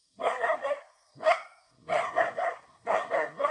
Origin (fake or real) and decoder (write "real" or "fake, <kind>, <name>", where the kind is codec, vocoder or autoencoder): fake, codec, SNAC